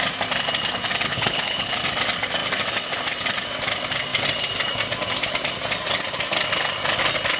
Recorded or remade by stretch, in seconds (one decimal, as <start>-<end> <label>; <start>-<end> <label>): 0.0-1.1 recorded; 1.1-1.7 remade; 1.7-7.4 recorded